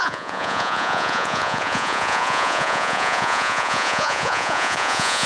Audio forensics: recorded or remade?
remade